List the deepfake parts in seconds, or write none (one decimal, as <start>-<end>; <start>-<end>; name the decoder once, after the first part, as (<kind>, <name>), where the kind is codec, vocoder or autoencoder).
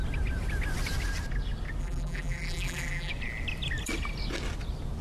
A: 1.8-3.1 (vocoder, BigVGAN v2)